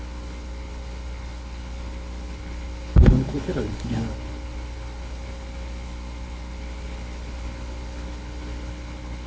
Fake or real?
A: fake